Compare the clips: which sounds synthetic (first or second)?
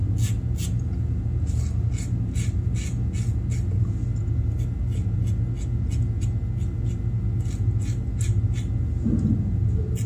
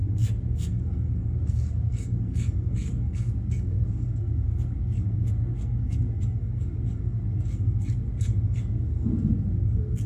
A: second